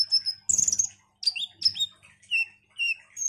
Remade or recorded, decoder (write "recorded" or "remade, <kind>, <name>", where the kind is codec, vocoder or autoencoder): recorded